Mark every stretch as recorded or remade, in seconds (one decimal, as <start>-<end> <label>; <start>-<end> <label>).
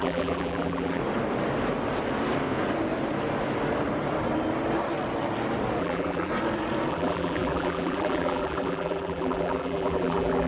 0.0-1.0 remade; 1.0-5.8 recorded; 5.8-6.3 remade; 6.3-6.9 recorded; 6.9-10.5 remade